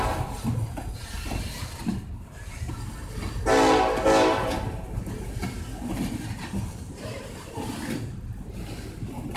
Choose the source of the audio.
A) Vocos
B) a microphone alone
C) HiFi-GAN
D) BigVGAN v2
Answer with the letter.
B